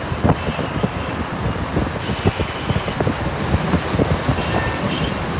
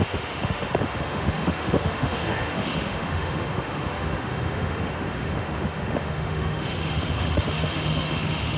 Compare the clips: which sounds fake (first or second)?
second